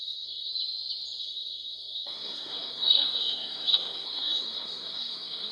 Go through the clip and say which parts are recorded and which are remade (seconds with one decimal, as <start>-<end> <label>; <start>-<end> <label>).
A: 0.0-0.5 remade; 0.5-1.2 recorded; 1.2-5.5 remade